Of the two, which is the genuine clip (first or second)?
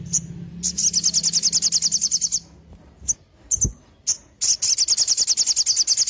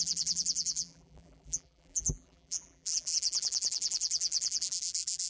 first